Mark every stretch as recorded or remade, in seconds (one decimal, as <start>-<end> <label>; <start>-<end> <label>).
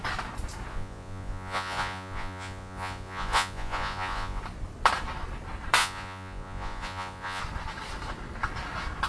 0.0-0.7 recorded; 0.7-4.4 remade; 4.4-5.8 recorded; 5.8-7.4 remade; 7.4-9.1 recorded